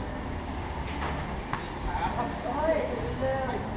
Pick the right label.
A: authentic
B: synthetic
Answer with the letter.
A